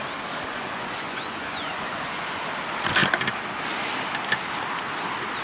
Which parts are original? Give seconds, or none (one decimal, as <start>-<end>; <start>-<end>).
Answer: 0.0-0.5; 2.4-5.4